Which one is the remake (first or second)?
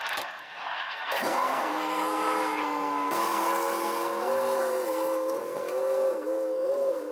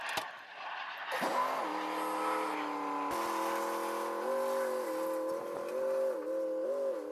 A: first